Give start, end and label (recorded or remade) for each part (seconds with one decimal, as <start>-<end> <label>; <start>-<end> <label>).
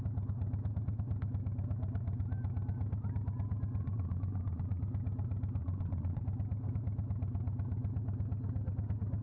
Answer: 0.0-3.8 recorded; 3.8-4.8 remade; 4.8-5.6 recorded; 5.6-6.2 remade; 6.2-9.2 recorded